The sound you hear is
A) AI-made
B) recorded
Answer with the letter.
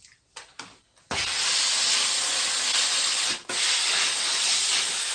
B